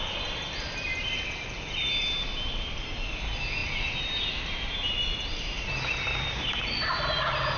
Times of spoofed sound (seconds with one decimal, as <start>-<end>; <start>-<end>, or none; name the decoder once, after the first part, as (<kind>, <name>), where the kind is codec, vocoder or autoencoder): none